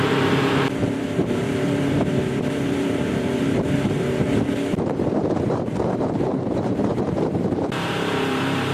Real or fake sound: fake